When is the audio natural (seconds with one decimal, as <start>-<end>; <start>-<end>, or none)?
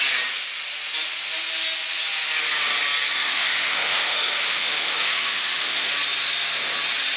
0.0-3.2; 5.9-7.2